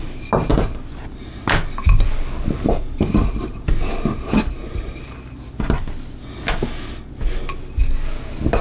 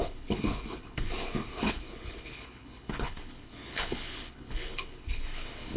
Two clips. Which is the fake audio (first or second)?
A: second